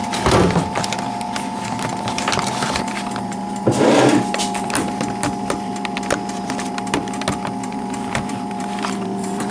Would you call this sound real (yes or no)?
no